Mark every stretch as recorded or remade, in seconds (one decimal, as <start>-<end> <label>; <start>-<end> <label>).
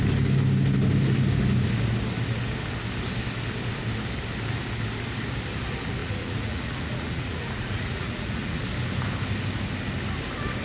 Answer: 0.0-6.0 recorded; 6.0-8.6 remade; 8.6-10.6 recorded